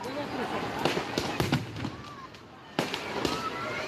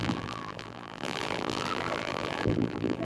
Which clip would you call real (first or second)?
first